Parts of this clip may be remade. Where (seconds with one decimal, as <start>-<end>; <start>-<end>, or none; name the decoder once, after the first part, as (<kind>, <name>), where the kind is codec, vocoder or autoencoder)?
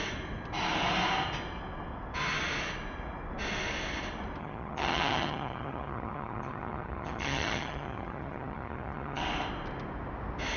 4.4-9.2 (vocoder, HiFi-GAN)